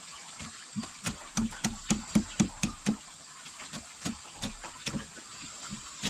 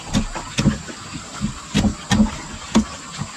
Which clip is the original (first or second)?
second